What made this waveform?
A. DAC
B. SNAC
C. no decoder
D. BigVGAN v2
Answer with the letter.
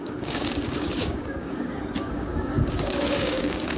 A